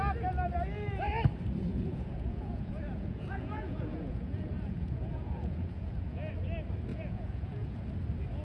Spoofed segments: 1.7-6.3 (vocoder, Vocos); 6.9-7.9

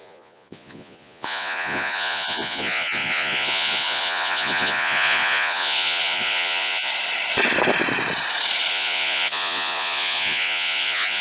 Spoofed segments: 0.0-6.9 (vocoder, Vocos); 8.7-11.2